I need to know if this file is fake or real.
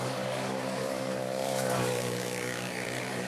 fake